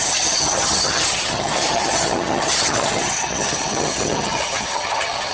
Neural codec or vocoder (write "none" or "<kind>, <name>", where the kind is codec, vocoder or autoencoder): vocoder, HiFi-GAN